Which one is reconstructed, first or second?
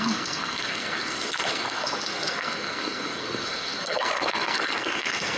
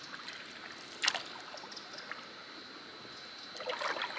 first